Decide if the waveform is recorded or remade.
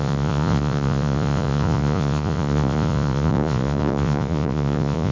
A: remade